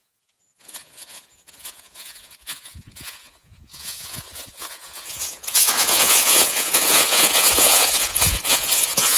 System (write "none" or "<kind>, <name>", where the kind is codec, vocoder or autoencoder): vocoder, Vocos